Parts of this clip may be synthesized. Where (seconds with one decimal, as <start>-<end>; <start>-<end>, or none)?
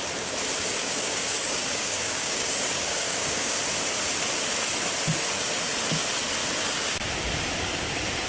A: 0.8-3.5